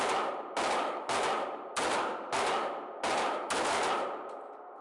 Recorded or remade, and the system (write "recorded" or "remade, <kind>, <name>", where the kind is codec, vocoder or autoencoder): recorded